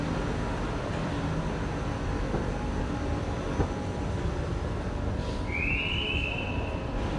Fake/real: real